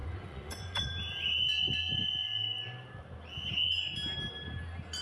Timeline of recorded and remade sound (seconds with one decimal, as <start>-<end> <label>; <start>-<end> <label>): 0.0-0.9 remade; 0.9-5.0 recorded